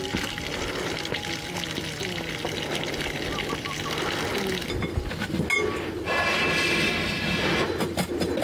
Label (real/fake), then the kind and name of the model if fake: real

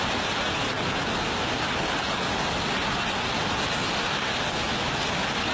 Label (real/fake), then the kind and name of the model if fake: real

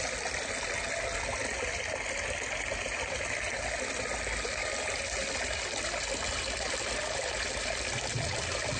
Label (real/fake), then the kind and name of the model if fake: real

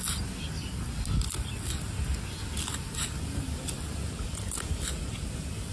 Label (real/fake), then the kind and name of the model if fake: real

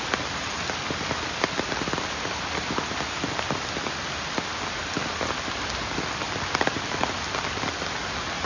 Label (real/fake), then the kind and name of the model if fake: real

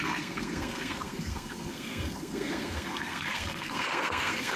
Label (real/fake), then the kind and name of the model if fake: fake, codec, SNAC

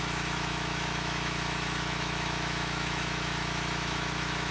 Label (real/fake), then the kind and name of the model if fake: fake, autoencoder, DAC-VAE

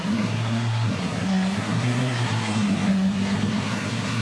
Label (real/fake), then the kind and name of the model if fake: fake, codec, SNAC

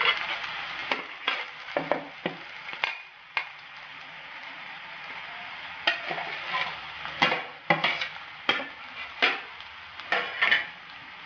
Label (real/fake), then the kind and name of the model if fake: real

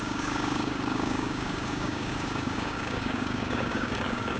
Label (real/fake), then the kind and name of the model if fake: fake, codec, DAC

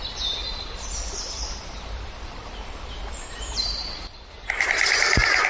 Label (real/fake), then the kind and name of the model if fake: fake, vocoder, BigVGAN v2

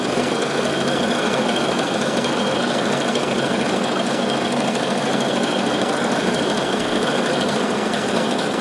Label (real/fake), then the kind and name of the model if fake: fake, codec, SNAC